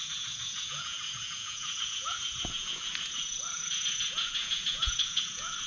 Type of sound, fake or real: fake